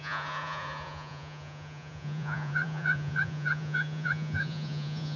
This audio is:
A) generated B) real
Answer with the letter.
A